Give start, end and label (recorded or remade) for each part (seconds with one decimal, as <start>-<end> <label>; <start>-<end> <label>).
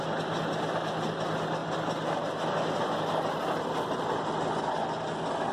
0.0-5.5 recorded